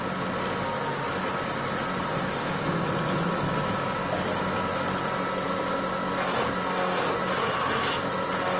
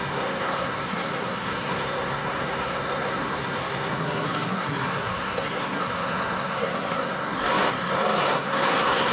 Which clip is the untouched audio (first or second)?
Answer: first